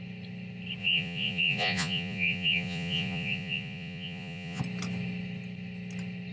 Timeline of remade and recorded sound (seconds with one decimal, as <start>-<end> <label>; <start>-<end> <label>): 0.0-0.8 recorded; 0.8-4.6 remade; 4.6-6.3 recorded